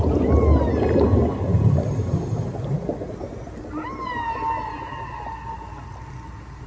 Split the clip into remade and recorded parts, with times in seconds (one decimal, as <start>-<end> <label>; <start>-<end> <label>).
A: 0.0-6.7 recorded